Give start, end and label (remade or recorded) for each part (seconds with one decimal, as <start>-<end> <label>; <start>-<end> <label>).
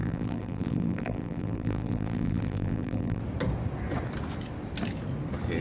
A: 0.0-3.2 remade; 3.2-5.6 recorded